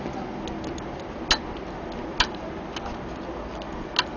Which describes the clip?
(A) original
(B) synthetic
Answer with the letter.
A